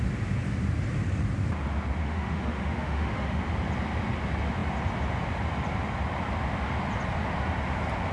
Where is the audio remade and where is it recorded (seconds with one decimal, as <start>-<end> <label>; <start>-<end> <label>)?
0.0-2.0 recorded; 2.0-3.4 remade; 3.4-8.1 recorded

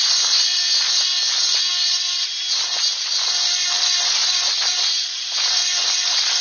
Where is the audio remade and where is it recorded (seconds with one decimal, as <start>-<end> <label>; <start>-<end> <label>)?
0.0-4.2 recorded; 4.2-5.6 remade; 5.6-6.4 recorded

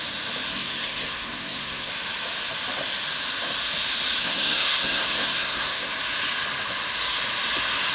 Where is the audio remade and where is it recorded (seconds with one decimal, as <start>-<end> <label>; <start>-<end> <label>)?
0.0-0.5 recorded; 0.5-1.9 remade; 1.9-4.2 recorded; 4.2-5.9 remade; 5.9-7.9 recorded

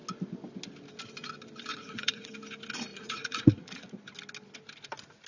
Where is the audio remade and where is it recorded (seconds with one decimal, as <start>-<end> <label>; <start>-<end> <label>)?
0.0-1.7 recorded; 1.7-2.3 remade; 2.3-2.9 recorded; 2.9-3.9 remade; 3.9-5.3 recorded

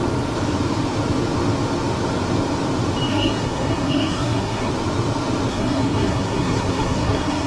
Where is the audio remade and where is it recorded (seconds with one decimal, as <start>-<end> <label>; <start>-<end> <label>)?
0.0-3.1 recorded; 3.1-4.7 remade; 4.7-5.5 recorded; 5.5-7.5 remade

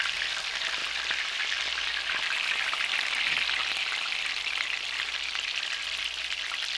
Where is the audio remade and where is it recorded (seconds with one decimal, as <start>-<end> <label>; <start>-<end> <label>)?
0.0-6.8 recorded